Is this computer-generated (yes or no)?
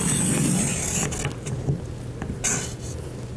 no